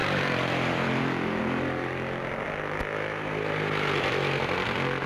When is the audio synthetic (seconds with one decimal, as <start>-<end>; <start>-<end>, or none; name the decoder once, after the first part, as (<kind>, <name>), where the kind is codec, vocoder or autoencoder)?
0.0-1.4 (vocoder, BigVGAN v2)